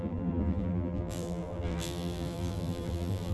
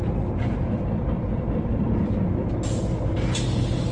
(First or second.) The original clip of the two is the second